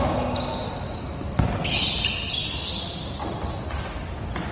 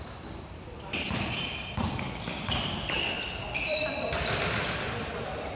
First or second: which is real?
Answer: first